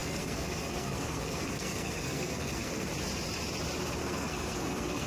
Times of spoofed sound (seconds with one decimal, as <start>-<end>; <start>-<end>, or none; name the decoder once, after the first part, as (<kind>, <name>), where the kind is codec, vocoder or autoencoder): 0.0-2.9 (codec, SNAC); 4.0-5.1